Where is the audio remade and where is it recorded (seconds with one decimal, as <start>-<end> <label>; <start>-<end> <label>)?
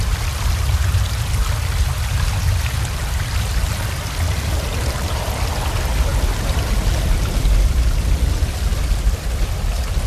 0.0-10.1 recorded